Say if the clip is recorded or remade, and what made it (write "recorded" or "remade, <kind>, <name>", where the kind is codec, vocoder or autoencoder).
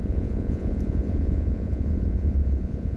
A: remade, vocoder, Vocos